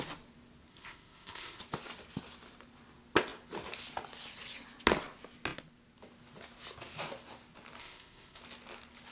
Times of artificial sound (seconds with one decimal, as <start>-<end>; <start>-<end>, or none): 0.7-1.6; 7.8-8.4